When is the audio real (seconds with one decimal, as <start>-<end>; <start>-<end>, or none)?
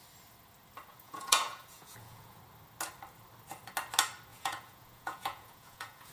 0.0-0.9; 2.4-4.3